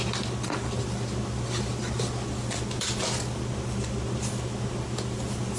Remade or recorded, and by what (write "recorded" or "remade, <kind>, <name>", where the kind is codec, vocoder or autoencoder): recorded